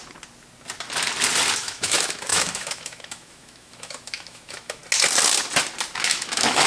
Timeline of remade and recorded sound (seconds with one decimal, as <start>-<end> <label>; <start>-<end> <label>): 0.0-1.6 recorded; 1.6-4.8 remade; 4.8-6.0 recorded; 6.0-6.7 remade